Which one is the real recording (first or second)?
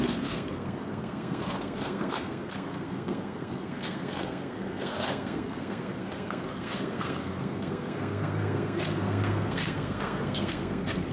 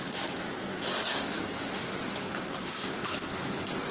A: second